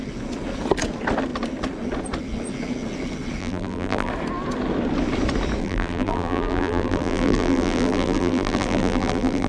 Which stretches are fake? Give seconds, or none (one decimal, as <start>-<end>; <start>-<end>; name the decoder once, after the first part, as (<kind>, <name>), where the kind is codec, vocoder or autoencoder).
3.4-4.1 (vocoder, BigVGAN v2); 5.6-9.5